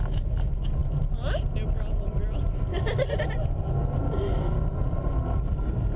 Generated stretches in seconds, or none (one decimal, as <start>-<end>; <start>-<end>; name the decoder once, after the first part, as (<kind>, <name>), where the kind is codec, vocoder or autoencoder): none